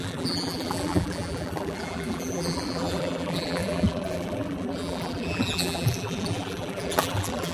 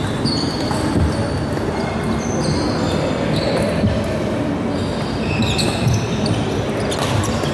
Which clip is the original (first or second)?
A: second